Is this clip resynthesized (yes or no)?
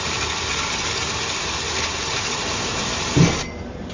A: no